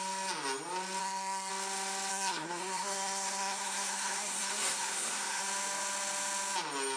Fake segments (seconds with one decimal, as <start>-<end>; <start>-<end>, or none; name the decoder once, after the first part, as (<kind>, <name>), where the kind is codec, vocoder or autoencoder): 1.0-1.5 (codec, SNAC); 2.1-5.4